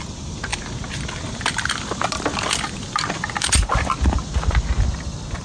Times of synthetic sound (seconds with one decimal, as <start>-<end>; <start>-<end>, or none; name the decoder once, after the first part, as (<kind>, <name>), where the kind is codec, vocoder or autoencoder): none